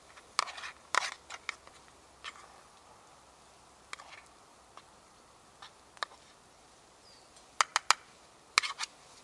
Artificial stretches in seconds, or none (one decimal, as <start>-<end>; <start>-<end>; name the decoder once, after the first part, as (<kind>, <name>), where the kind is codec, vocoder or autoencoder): none